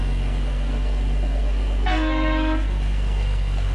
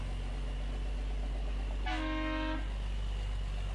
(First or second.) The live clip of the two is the second